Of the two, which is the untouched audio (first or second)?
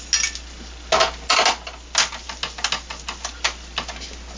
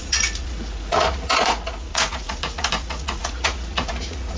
first